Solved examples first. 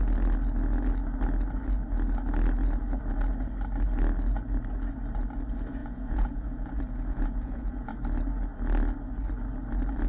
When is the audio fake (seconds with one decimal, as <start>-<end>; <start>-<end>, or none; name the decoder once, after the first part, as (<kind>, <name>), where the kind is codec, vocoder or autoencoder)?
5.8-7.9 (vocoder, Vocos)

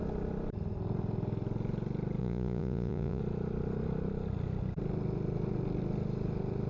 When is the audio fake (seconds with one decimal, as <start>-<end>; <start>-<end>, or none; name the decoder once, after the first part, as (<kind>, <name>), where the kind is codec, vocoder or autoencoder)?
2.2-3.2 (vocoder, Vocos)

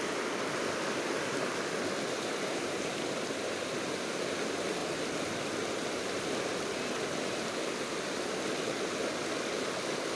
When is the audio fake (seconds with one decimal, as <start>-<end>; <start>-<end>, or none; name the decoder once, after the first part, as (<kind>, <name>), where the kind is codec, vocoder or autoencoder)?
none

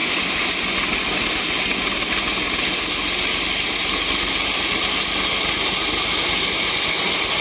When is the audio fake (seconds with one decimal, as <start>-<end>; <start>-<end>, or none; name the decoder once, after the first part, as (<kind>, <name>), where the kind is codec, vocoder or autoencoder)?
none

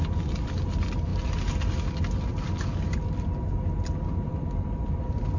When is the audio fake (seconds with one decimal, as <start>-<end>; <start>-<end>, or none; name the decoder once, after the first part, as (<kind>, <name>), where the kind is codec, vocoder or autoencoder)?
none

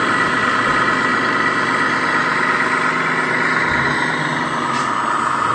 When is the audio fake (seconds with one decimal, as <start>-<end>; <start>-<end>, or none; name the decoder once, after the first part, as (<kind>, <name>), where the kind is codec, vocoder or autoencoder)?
none